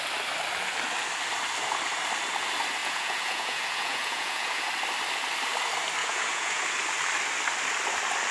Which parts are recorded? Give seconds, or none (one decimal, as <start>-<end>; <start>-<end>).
0.0-2.8; 4.7-6.0; 6.6-8.3